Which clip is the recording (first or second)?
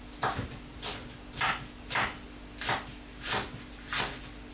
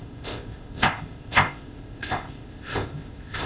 first